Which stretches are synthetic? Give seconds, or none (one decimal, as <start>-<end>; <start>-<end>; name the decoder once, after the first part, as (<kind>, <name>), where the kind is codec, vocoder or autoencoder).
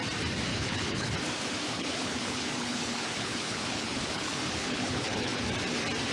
0.5-1.1 (codec, HILCodec); 1.7-5.4